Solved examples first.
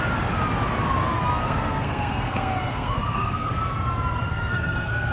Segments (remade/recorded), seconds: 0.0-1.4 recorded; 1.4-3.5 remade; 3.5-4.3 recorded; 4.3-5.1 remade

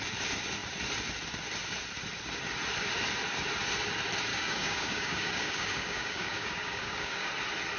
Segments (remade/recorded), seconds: 0.0-4.3 recorded; 4.3-7.3 remade; 7.3-7.8 recorded

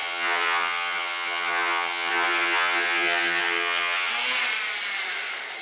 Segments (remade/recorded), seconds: 0.0-4.1 remade; 4.1-5.6 recorded

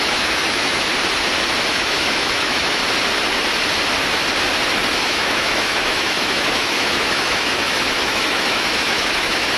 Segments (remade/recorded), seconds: 0.0-0.9 remade; 0.9-1.7 recorded; 1.7-2.8 remade; 2.8-5.0 recorded; 5.0-9.6 remade

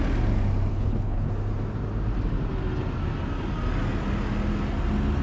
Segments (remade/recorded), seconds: 0.0-0.7 recorded; 0.7-1.3 remade; 1.3-5.2 recorded

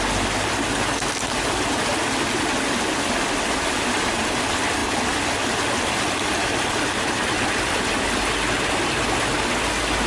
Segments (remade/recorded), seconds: 0.0-10.1 recorded

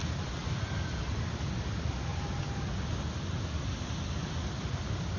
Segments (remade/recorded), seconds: 0.0-5.2 recorded